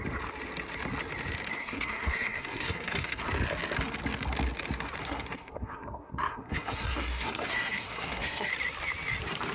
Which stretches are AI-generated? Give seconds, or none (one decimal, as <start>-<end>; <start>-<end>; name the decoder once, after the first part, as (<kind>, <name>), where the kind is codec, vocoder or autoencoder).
1.6-3.2 (codec, SNAC); 5.0-8.5